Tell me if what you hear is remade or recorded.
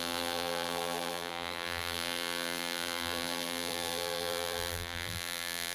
remade